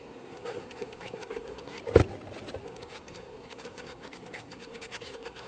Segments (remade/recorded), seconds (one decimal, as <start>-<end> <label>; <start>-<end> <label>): 0.0-1.8 remade; 1.8-2.6 recorded; 2.6-5.5 remade